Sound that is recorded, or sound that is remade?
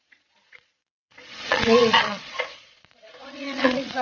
remade